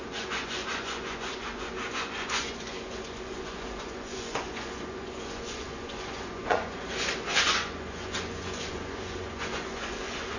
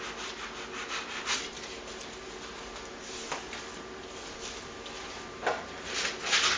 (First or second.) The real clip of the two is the second